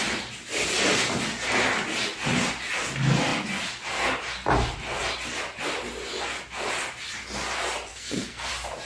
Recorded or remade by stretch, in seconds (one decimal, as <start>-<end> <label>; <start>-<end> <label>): 0.0-7.9 recorded; 7.9-8.5 remade; 8.5-8.9 recorded